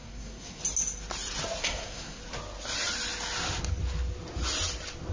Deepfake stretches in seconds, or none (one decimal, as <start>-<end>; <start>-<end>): 0.0-0.6; 1.6-2.2